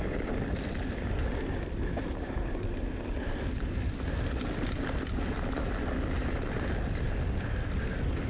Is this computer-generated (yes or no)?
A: no